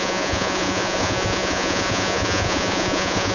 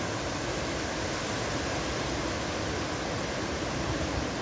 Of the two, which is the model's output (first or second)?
first